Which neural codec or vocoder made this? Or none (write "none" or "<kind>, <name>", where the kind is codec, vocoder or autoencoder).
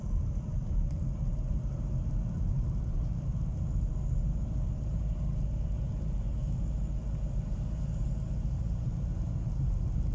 none